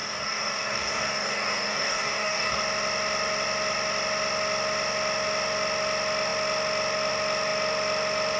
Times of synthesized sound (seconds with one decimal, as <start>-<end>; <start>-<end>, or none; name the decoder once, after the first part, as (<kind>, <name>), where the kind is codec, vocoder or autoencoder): 0.0-2.6 (codec, DAC)

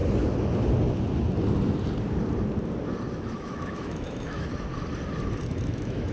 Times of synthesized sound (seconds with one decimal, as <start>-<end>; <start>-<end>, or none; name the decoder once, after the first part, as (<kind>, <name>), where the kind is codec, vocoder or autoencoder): 3.1-4.5 (autoencoder, DAC-VAE); 5.6-6.1